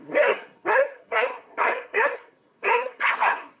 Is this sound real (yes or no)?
no